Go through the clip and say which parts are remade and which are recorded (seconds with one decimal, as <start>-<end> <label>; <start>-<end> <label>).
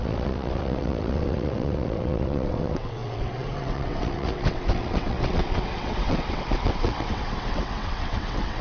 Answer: 0.0-8.6 remade